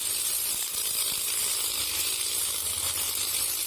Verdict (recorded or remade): remade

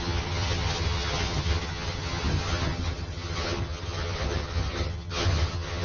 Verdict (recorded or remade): remade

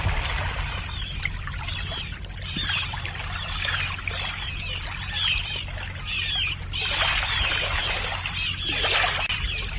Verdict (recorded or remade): recorded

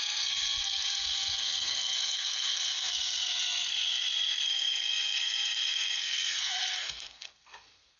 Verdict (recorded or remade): remade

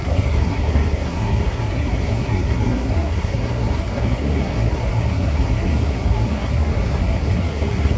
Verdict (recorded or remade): remade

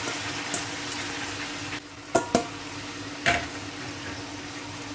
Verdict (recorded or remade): recorded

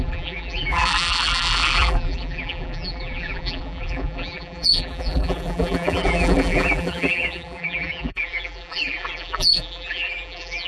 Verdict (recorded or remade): remade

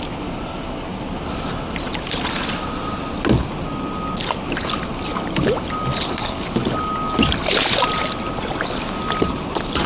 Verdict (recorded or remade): recorded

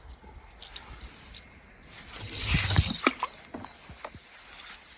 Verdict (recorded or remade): recorded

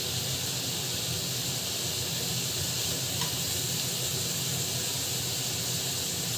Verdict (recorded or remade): recorded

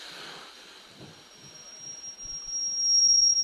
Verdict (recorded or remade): remade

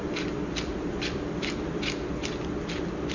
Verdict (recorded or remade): recorded